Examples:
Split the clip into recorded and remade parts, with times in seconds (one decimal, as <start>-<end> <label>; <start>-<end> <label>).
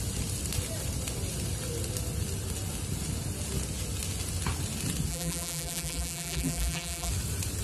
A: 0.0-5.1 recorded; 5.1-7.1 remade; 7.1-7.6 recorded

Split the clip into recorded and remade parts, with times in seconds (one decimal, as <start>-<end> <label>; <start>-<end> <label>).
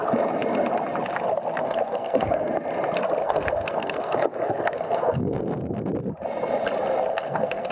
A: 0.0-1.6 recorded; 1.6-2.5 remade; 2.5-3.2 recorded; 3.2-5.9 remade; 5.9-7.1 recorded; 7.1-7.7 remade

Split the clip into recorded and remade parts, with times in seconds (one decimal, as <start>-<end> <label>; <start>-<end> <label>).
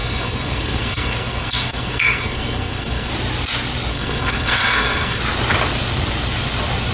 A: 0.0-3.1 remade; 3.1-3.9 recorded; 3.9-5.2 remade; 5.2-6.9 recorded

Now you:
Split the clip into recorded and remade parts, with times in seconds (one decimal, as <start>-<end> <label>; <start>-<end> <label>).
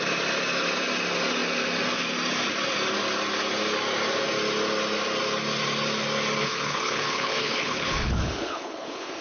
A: 0.0-6.4 recorded; 6.4-9.2 remade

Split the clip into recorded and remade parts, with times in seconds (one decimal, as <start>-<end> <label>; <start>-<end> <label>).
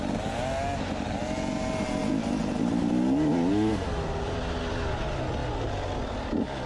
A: 0.0-6.7 recorded